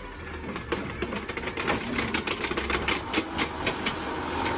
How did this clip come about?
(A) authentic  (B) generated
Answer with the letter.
A